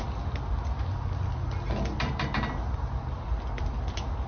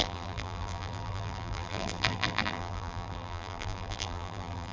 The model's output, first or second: second